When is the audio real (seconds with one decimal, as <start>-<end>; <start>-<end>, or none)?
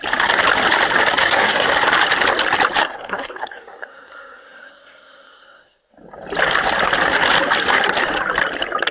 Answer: 0.0-1.2; 1.7-2.8; 5.9-8.9